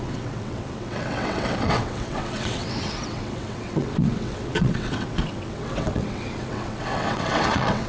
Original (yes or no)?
no